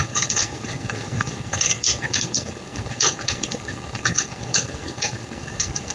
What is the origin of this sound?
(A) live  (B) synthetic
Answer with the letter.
B